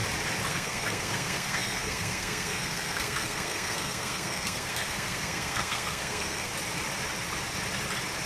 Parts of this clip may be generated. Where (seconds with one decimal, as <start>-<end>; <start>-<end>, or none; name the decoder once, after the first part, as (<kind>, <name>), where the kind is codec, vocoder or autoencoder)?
0.5-6.5 (codec, SNAC)